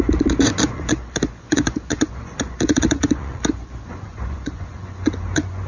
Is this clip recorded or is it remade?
remade